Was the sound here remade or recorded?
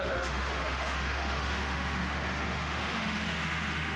remade